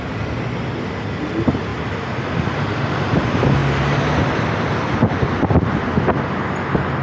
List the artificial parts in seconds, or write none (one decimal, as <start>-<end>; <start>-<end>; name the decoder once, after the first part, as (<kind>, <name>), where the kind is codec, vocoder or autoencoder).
none